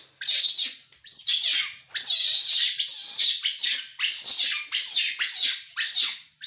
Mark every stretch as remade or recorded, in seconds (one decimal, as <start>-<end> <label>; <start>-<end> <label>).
0.0-6.5 recorded